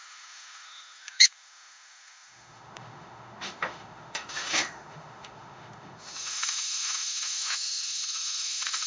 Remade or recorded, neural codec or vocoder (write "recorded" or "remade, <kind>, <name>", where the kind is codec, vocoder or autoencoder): remade, autoencoder, DAC-VAE